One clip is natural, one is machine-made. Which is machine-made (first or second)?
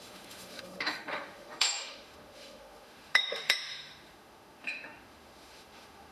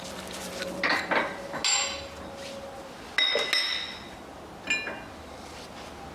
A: first